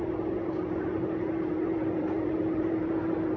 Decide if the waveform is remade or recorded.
remade